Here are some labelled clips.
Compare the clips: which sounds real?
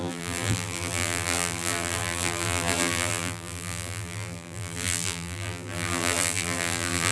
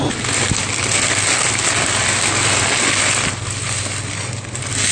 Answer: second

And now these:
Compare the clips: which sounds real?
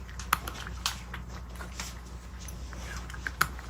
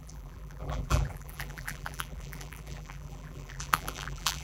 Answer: first